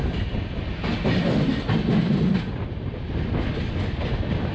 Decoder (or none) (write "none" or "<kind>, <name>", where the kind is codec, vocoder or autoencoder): none